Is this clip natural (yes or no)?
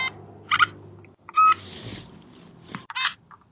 yes